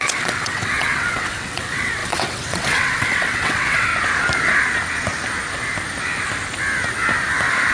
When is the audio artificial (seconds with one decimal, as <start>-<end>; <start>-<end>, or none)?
0.0-3.9